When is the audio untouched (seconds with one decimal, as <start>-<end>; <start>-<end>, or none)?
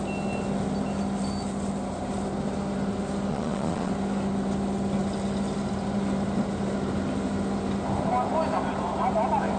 0.0-3.3; 3.9-9.6